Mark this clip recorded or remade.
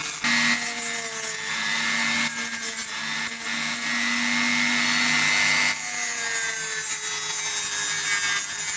recorded